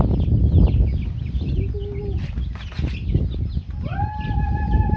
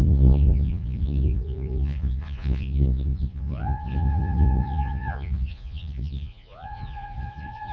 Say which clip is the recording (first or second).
first